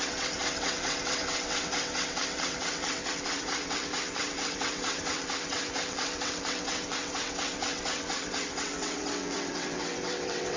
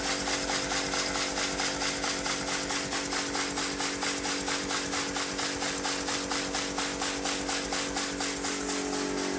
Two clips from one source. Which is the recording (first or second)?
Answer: second